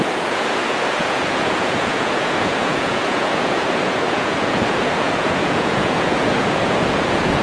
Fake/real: fake